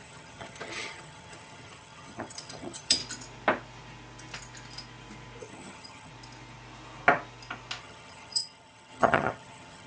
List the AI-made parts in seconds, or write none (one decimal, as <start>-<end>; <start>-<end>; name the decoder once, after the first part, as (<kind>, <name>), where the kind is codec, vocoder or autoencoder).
0.0-3.0 (vocoder, HiFi-GAN); 5.4-6.1; 7.8-9.9